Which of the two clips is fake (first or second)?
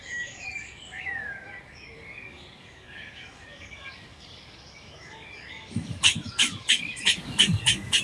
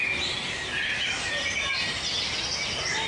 first